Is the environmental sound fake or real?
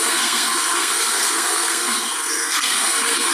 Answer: fake